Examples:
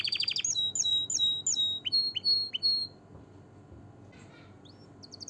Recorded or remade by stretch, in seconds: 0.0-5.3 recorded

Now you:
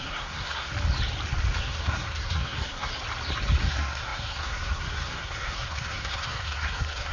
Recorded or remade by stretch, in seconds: 0.0-0.7 remade; 0.7-1.6 recorded; 1.6-2.9 remade; 2.9-3.6 recorded; 3.6-7.1 remade

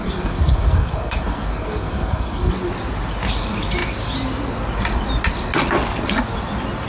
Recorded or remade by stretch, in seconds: 0.0-2.5 remade; 2.5-6.9 recorded

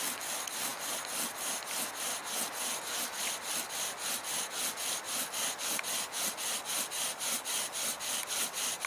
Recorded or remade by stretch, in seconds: 0.0-8.9 recorded

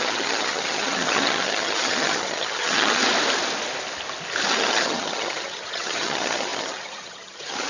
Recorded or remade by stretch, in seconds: 0.0-3.0 remade; 3.0-4.5 recorded; 4.5-7.7 remade

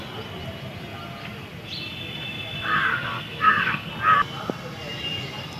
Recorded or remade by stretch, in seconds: 0.0-2.9 recorded; 2.9-3.9 remade; 3.9-5.6 recorded